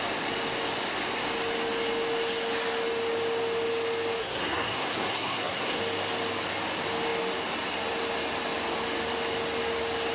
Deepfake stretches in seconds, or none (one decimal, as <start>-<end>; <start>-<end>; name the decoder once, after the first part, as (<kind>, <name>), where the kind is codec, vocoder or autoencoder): 4.2-5.8 (codec, SNAC)